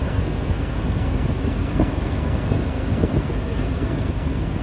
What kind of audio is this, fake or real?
fake